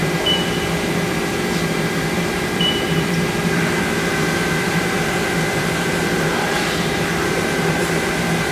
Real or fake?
fake